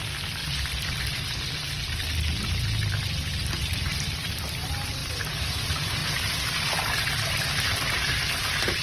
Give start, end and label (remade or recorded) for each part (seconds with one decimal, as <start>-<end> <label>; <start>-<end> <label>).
0.0-8.8 remade